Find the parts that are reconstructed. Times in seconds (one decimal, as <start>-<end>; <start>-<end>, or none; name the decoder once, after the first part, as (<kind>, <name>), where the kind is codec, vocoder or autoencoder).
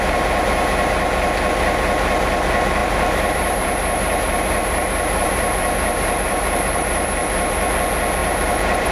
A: 2.8-7.7 (vocoder, BigVGAN v2); 8.2-8.9